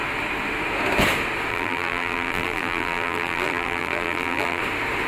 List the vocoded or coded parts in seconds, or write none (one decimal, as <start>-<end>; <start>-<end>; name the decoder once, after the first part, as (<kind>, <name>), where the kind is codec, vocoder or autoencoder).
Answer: 1.5-4.6 (vocoder, BigVGAN v2)